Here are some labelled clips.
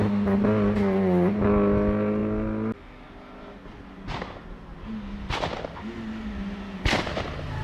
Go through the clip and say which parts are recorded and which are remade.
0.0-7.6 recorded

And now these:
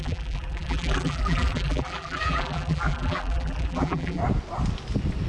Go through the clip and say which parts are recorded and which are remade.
0.0-4.2 remade; 4.2-5.3 recorded

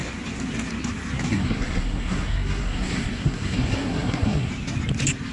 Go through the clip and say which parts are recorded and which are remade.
0.0-1.3 recorded; 1.3-4.5 remade; 4.5-5.3 recorded

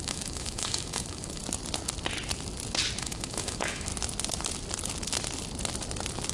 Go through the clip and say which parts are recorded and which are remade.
0.0-1.4 remade; 1.4-3.0 recorded; 3.0-3.9 remade; 3.9-6.3 recorded

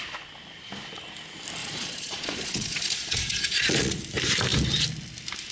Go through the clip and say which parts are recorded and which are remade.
0.0-1.6 recorded; 1.6-4.0 remade; 4.0-5.5 recorded

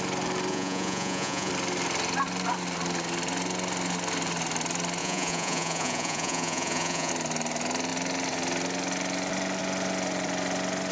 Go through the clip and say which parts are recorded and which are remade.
0.0-0.5 recorded; 0.5-1.5 remade; 1.5-5.0 recorded; 5.0-7.1 remade; 7.1-10.9 recorded

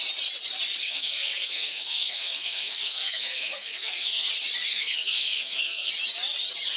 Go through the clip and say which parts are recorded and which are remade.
0.0-0.8 recorded; 0.8-4.3 remade; 4.3-4.7 recorded; 4.7-5.9 remade; 5.9-6.8 recorded